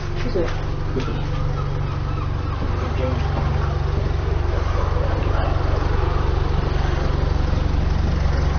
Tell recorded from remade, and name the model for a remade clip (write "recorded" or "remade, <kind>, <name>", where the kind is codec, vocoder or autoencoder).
recorded